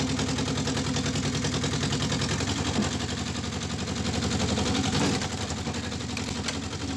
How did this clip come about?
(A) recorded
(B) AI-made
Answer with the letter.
A